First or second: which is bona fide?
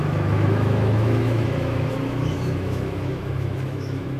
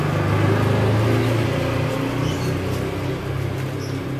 second